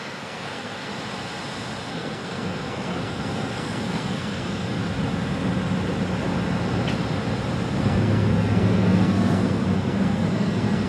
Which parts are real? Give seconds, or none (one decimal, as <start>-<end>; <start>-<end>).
0.9-1.9; 4.8-7.8